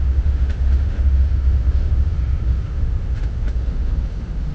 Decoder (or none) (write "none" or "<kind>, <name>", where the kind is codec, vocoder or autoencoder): autoencoder, DAC-VAE